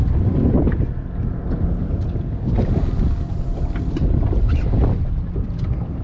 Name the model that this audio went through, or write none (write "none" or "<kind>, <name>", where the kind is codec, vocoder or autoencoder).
none